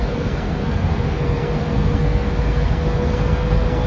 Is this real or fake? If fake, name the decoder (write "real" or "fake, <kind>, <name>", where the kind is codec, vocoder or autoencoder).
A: fake, codec, SNAC